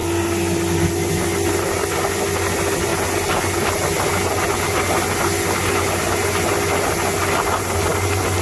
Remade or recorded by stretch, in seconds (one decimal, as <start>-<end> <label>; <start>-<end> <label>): 0.0-8.4 recorded